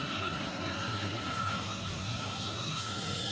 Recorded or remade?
remade